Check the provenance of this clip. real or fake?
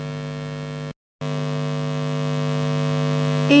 real